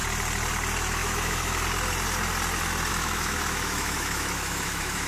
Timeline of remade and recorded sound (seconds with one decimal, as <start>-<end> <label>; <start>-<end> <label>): 0.0-1.0 recorded; 1.0-1.6 remade; 1.6-2.9 recorded; 2.9-5.1 remade